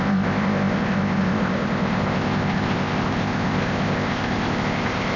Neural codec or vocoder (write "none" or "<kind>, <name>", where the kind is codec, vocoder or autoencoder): codec, ZipCodec